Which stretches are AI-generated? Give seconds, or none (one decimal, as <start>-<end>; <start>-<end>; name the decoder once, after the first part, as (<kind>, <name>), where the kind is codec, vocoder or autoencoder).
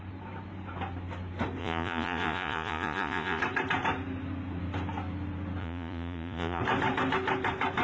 1.6-3.4 (vocoder, Vocos); 5.6-6.6